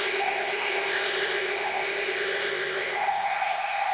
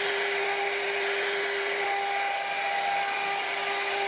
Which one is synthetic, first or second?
first